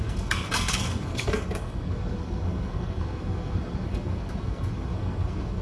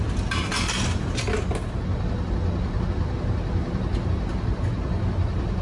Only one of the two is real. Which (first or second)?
second